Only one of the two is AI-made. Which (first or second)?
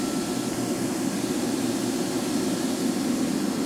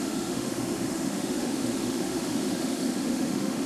second